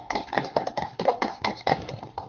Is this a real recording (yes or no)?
no